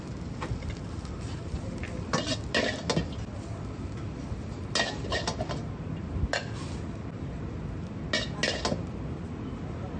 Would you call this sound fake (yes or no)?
no